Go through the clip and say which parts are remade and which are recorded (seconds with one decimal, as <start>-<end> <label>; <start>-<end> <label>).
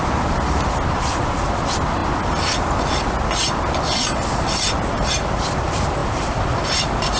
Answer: 0.0-7.2 recorded